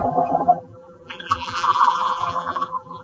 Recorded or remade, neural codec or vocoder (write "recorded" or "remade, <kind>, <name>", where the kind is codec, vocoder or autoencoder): remade, vocoder, BigVGAN v2